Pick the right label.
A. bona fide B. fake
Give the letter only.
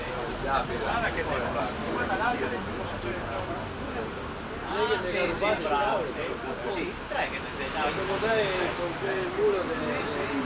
A